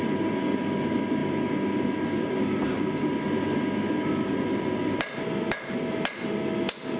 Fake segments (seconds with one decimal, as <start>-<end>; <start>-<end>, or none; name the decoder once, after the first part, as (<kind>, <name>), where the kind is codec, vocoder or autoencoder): none